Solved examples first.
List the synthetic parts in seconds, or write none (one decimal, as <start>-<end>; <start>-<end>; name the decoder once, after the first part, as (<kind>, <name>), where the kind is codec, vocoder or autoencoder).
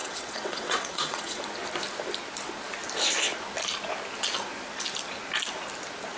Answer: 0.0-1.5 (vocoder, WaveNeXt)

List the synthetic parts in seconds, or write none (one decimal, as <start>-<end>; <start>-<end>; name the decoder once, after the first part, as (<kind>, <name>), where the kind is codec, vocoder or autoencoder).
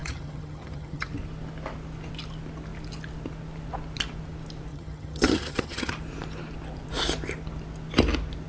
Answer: 0.0-1.1 (vocoder, HiFi-GAN); 4.7-5.9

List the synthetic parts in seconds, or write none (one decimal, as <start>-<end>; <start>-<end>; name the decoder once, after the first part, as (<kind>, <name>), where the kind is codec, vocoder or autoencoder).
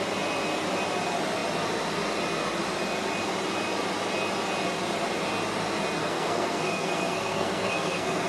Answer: 6.0-8.3 (codec, SNAC)